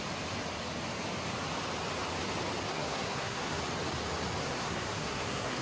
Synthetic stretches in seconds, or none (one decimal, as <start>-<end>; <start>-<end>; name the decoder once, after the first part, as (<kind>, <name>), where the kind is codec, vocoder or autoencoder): 2.7-3.6 (codec, SNAC); 4.4-5.6